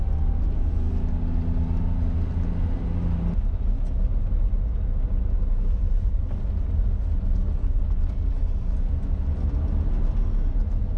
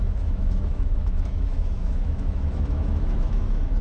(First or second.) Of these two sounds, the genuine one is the first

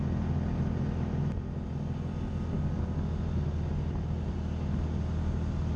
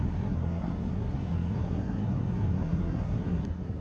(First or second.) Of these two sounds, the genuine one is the first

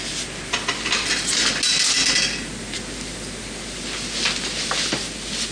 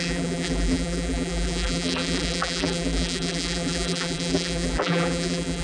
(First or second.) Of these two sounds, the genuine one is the first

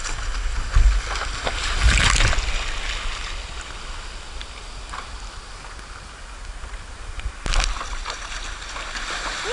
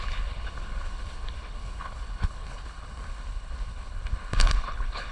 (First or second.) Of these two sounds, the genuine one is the first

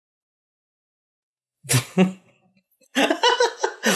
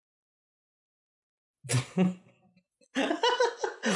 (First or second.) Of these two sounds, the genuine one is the second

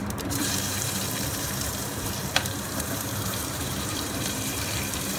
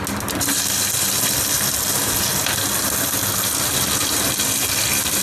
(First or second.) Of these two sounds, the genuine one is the second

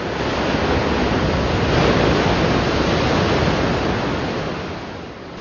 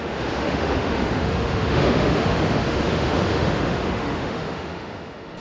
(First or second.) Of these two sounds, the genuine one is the first